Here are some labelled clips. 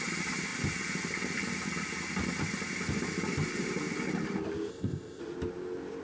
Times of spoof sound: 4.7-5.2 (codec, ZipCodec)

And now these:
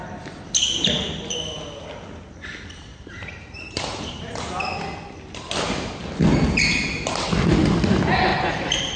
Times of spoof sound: 2.9-4.5 (vocoder, BigVGAN v2); 8.3-9.0

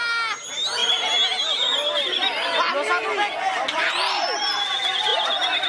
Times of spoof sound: none

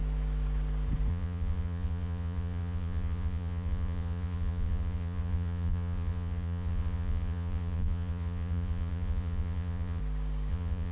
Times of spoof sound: 1.1-10.0 (vocoder, Vocos); 10.5-10.9

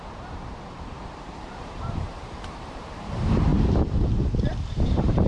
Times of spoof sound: 0.0-3.5 (vocoder, BigVGAN v2); 4.7-5.3

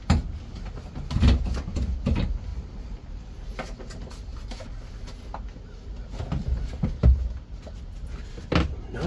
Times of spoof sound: none

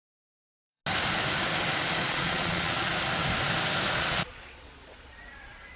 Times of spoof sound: 0.0-0.8 (vocoder, Vocos); 2.1-2.9; 4.0-5.8